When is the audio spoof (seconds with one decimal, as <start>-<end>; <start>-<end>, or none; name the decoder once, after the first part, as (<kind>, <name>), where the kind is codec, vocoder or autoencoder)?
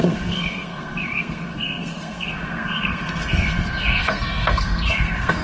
0.0-5.4 (codec, SNAC)